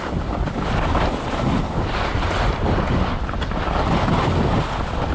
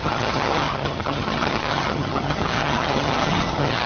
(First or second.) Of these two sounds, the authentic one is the first